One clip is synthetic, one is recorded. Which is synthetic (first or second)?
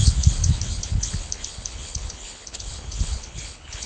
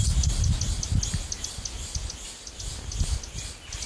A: first